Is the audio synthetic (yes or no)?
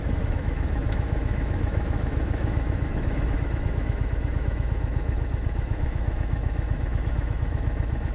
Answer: yes